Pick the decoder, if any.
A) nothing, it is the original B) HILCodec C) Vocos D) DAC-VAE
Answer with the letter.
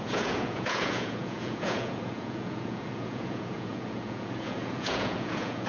C